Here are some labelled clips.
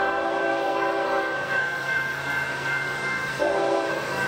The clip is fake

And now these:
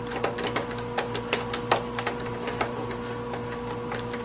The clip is real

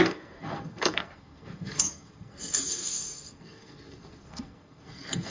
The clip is fake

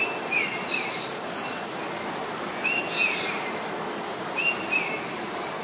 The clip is real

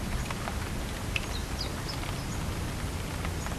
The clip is real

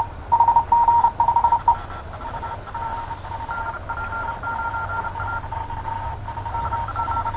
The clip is real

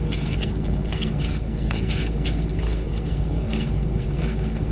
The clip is fake